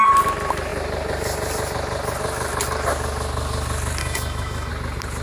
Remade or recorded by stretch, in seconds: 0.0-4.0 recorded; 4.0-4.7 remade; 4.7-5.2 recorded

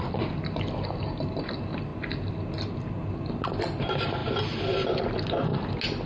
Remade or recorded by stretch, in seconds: 0.0-6.1 recorded